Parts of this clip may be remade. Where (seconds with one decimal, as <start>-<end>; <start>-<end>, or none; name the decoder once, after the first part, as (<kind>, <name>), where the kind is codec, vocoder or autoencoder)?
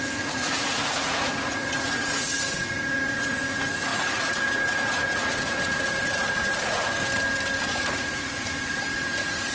0.0-7.0 (vocoder, Vocos); 7.6-9.5